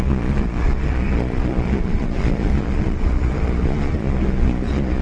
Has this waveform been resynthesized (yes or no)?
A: yes